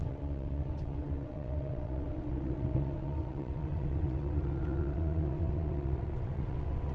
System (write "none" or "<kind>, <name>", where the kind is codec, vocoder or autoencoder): vocoder, WaveNeXt